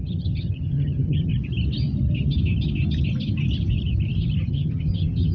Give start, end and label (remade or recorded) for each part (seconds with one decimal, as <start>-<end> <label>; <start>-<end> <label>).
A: 0.0-1.3 remade; 1.3-4.5 recorded; 4.5-5.3 remade